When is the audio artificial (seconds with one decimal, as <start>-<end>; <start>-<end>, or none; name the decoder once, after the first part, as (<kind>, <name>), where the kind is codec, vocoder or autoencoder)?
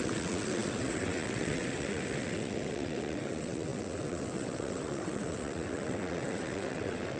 0.0-7.2 (vocoder, WaveNeXt)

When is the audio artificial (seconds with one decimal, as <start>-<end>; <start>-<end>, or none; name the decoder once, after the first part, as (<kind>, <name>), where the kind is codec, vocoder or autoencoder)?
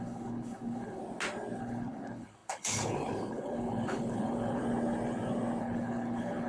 0.0-1.0 (codec, HILCodec); 1.6-4.6; 5.6-6.5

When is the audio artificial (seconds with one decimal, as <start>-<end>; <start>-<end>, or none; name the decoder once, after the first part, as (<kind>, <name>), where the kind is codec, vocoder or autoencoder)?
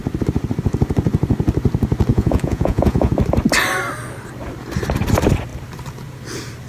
2.1-3.1 (vocoder, Vocos)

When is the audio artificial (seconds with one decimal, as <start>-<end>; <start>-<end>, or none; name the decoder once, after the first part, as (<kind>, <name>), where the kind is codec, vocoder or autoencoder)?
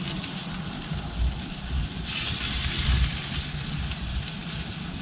none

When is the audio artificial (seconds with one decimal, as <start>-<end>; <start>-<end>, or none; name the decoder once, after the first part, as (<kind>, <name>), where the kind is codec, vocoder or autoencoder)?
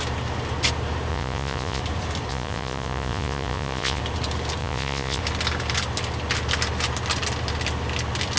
1.1-1.8 (vocoder, Vocos); 2.3-4.0; 4.6-5.2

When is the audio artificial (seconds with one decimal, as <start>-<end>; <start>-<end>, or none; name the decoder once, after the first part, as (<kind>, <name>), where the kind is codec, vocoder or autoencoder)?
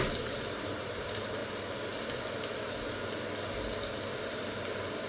0.0-1.4 (vocoder, BigVGAN v2); 4.5-5.1